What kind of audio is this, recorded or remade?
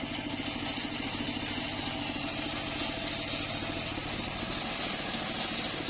recorded